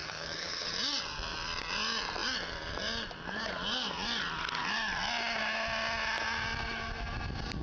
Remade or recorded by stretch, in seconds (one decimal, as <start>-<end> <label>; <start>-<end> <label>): 0.0-0.7 remade; 0.7-7.6 recorded